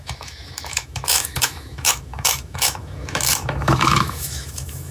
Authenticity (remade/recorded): remade